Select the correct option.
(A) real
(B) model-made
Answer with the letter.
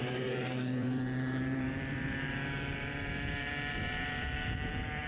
B